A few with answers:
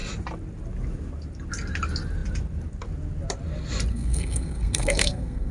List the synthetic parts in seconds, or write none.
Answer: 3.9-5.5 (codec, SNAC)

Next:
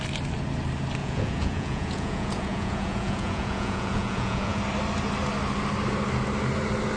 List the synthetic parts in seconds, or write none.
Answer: 1.0-4.6 (vocoder, Vocos)

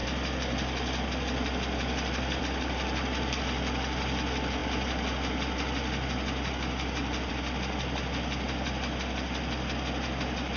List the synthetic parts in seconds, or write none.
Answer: none

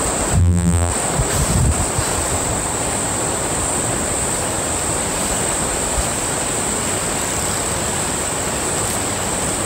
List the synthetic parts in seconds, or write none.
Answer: 0.4-0.9 (vocoder, BigVGAN v2)